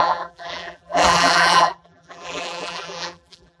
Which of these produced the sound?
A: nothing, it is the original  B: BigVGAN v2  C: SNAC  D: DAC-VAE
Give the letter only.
B